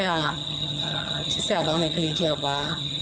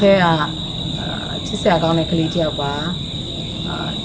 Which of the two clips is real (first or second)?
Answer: second